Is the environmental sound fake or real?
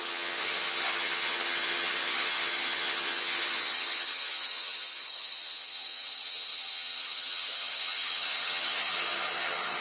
fake